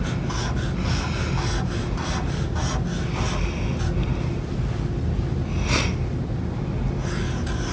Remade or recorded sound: recorded